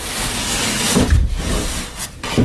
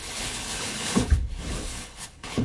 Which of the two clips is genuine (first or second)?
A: first